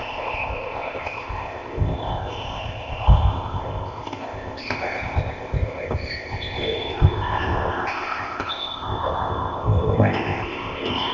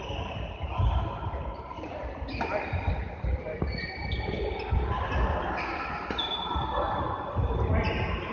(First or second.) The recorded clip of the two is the second